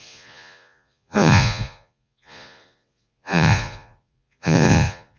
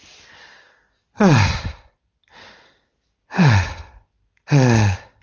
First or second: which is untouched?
second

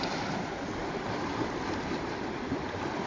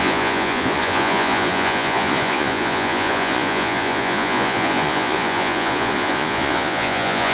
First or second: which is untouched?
first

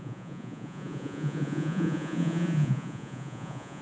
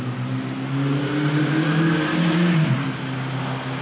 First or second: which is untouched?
second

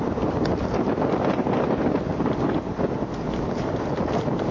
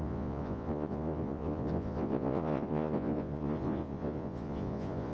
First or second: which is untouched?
first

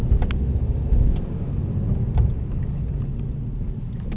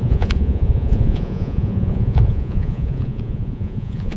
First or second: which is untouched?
first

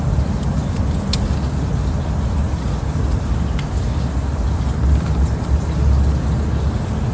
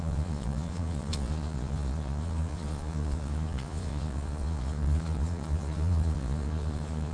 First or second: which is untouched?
first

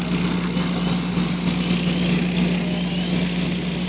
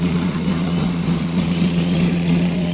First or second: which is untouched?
first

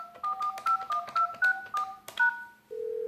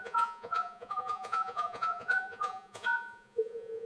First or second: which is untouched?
first